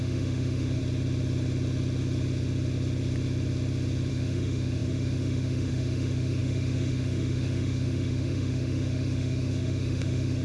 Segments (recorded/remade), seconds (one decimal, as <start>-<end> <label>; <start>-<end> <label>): 0.0-0.8 remade; 0.8-4.1 recorded; 4.1-10.4 remade

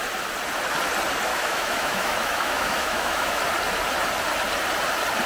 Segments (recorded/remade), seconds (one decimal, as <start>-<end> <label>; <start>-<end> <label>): 0.0-1.3 recorded; 1.3-3.4 remade; 3.4-5.3 recorded

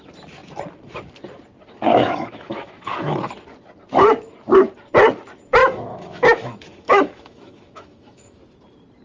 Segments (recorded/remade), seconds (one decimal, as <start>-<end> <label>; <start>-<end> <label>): 0.0-1.9 recorded; 1.9-3.3 remade; 3.3-5.6 recorded; 5.6-8.4 remade; 8.4-9.0 recorded

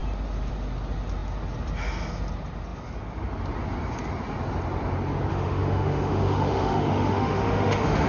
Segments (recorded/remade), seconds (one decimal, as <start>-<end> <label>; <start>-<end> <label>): 0.0-5.3 recorded; 5.3-8.1 remade

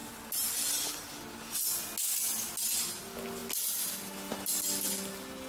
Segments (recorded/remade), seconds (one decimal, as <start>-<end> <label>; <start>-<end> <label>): 0.0-5.5 recorded